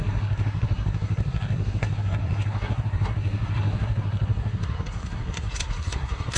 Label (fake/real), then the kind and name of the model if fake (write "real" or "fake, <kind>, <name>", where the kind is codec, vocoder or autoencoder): fake, codec, SNAC